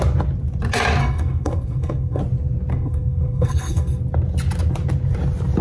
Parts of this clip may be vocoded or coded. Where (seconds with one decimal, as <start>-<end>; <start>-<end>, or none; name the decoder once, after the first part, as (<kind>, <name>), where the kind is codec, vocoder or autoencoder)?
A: 1.0-2.2 (codec, SNAC); 2.7-4.0